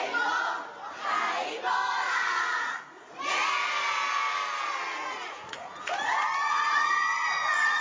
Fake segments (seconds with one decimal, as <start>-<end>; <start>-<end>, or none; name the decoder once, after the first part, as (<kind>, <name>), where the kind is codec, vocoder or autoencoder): 0.0-0.6 (vocoder, Vocos); 1.9-3.4; 4.8-7.8